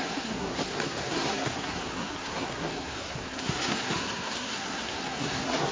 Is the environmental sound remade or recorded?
remade